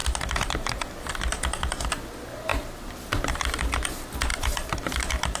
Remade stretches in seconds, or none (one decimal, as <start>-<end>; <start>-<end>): 0.0-1.2; 2.5-3.3; 4.3-5.4